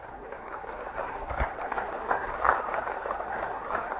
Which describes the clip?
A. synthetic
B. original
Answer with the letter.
A